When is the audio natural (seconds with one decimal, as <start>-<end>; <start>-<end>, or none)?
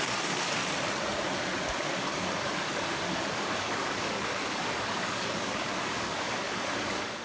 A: 0.6-1.9